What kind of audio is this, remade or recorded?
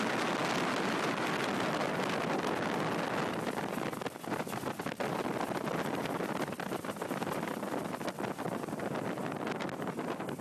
recorded